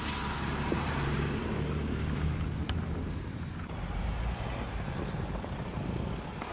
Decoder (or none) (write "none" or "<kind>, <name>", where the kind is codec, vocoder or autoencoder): vocoder, BigVGAN v2